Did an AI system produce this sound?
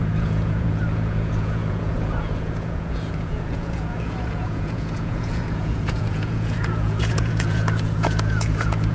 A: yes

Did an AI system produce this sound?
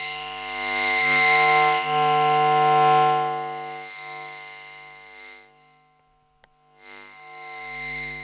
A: no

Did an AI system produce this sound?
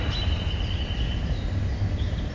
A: no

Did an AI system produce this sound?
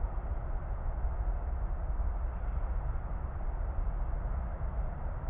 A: no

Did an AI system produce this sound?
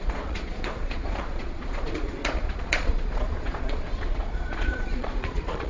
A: yes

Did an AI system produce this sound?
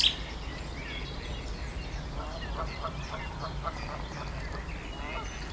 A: no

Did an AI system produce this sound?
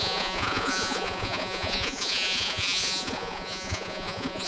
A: yes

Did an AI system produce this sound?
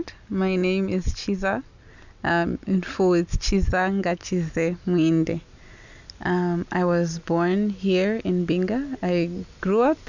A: no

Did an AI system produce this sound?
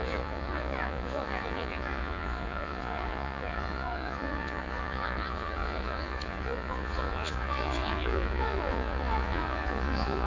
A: yes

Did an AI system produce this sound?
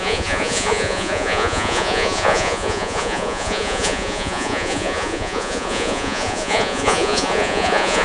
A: yes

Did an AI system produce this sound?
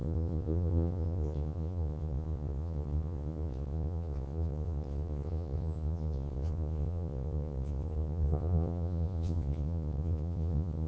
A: yes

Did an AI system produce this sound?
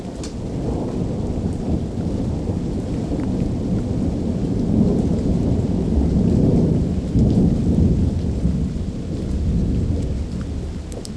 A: no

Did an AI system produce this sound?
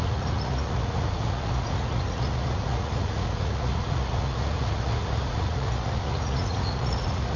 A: yes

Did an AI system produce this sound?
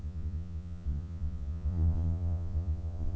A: yes